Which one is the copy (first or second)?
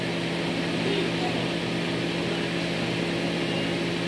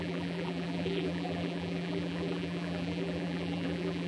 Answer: second